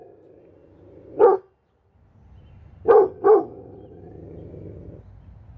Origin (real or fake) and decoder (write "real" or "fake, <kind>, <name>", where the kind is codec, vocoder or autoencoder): real